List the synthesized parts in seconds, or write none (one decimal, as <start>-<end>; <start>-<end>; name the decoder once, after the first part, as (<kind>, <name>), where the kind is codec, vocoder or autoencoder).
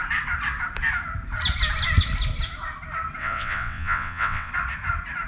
3.2-4.5 (vocoder, WaveNeXt)